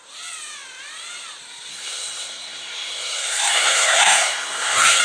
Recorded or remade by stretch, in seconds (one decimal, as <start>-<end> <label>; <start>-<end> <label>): 0.0-1.7 recorded; 1.7-5.0 remade